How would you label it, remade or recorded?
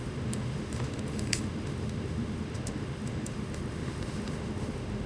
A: remade